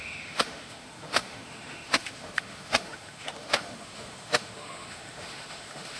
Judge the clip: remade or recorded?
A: remade